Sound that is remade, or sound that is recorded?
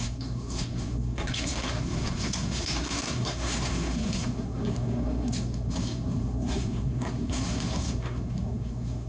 remade